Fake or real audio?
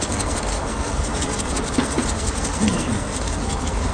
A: fake